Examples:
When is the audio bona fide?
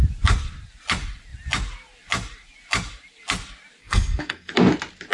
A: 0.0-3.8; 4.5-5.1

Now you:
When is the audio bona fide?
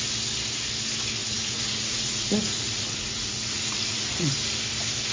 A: 0.0-1.2; 4.3-5.1